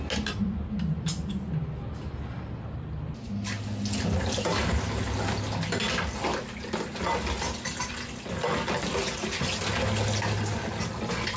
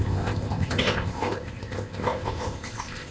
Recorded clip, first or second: first